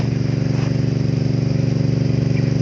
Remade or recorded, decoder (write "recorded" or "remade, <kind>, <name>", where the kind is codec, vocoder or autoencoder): recorded